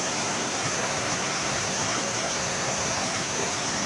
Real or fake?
fake